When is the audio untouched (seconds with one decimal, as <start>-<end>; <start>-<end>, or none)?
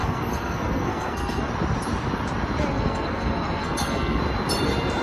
1.5-2.7; 4.2-5.0